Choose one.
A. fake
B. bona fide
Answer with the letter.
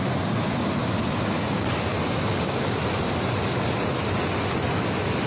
B